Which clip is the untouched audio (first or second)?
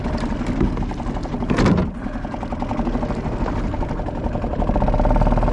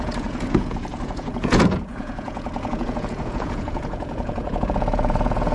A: first